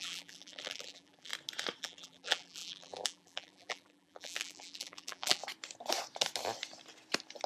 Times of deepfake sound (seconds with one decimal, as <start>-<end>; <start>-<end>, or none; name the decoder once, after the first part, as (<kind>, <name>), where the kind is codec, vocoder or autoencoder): 0.0-1.3 (vocoder, BigVGAN v2); 1.8-5.4